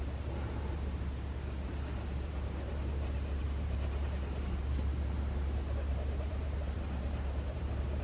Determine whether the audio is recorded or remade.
remade